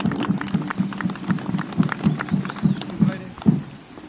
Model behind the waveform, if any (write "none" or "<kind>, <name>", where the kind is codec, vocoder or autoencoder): none